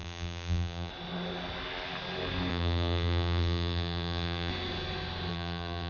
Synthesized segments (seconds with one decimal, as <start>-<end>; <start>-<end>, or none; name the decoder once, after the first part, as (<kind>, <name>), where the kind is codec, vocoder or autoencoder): 0.0-0.9 (vocoder, BigVGAN v2); 2.5-4.5; 5.3-5.9